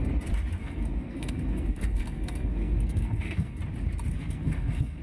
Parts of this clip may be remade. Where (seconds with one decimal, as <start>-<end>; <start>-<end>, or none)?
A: 0.6-3.6; 4.1-5.0